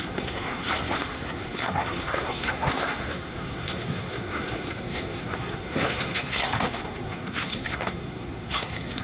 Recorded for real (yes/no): no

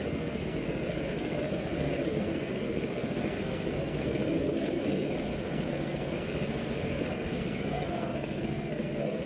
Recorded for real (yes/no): no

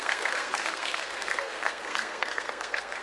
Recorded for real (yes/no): no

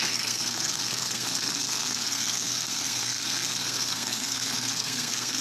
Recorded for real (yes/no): no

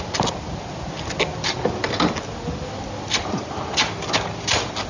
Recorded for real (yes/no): yes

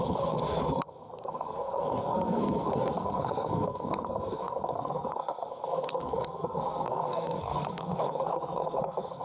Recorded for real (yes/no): no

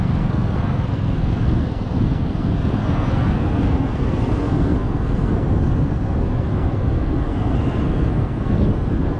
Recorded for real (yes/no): no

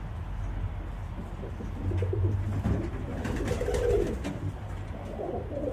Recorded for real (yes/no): yes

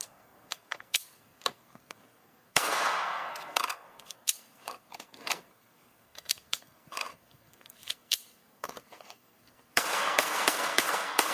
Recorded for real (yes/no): no